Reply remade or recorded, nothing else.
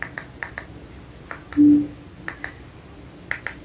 recorded